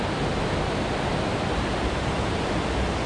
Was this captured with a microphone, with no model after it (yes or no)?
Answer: yes